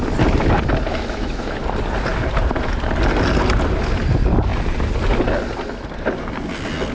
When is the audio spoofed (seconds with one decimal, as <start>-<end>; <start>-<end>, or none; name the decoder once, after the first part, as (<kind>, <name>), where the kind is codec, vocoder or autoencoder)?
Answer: 0.9-1.6 (autoencoder, DAC-VAE)